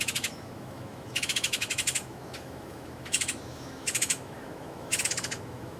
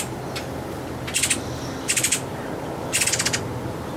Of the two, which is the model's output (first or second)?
first